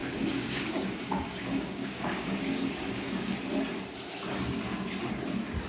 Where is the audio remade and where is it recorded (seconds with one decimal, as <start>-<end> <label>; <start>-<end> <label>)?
0.0-3.4 remade; 3.4-5.7 recorded

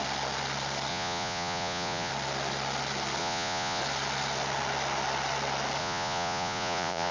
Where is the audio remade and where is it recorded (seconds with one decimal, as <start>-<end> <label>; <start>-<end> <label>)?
0.0-0.9 recorded; 0.9-2.1 remade; 2.1-3.2 recorded; 3.2-3.8 remade; 3.8-5.8 recorded; 5.8-7.1 remade

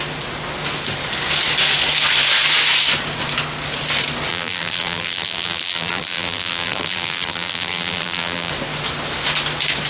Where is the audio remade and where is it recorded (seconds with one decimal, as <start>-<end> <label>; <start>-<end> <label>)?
0.0-4.3 recorded; 4.3-8.5 remade; 8.5-9.9 recorded

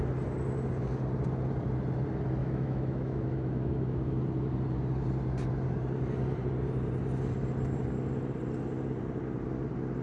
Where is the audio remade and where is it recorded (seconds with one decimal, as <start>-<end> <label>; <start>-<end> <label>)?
0.0-2.4 recorded; 2.4-4.2 remade; 4.2-10.0 recorded

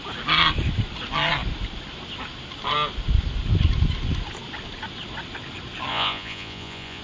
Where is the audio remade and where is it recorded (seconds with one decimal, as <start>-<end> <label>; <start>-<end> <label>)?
0.0-5.9 recorded; 5.9-7.0 remade

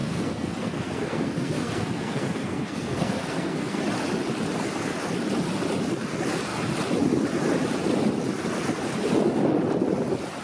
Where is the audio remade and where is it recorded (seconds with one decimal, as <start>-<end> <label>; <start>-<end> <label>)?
0.0-3.8 remade; 3.8-10.4 recorded

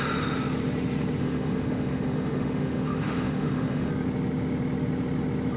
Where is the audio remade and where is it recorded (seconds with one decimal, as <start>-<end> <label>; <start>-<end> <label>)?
0.0-1.2 recorded; 1.2-3.9 remade; 3.9-5.6 recorded